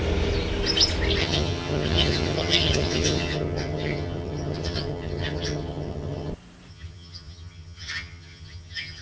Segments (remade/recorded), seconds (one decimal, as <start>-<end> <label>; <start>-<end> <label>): 0.0-1.2 recorded; 1.2-6.3 remade; 6.3-6.7 recorded; 6.7-9.0 remade